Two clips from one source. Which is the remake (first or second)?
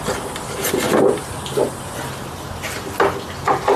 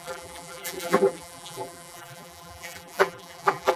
second